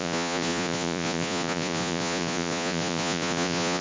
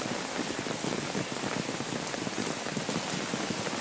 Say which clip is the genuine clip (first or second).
second